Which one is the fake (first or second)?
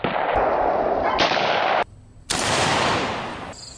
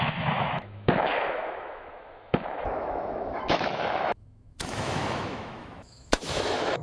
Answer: second